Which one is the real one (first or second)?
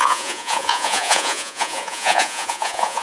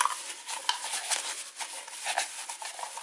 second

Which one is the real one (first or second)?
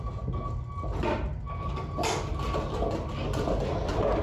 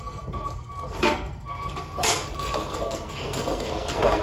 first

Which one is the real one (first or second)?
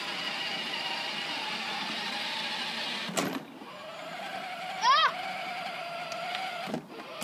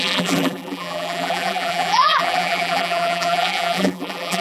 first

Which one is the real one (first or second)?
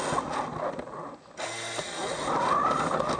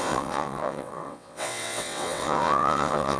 first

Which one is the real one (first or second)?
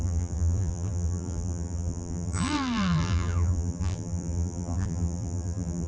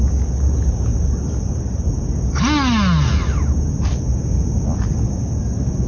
second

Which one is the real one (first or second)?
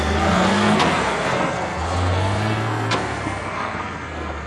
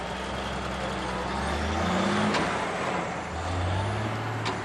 second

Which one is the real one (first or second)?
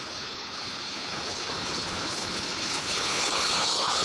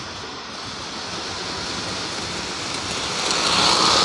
second